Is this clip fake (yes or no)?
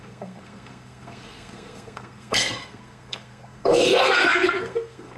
yes